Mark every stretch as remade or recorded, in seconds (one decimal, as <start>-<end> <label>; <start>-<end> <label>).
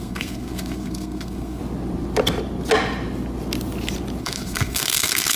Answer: 0.0-1.6 remade; 1.6-4.2 recorded; 4.2-5.4 remade